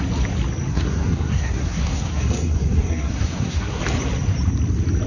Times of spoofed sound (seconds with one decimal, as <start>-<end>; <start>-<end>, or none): 0.7-3.8